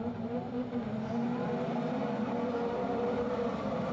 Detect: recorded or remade remade